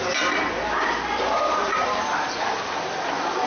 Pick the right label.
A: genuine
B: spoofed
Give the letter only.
A